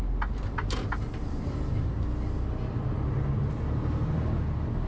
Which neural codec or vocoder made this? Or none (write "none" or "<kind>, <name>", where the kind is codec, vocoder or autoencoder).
none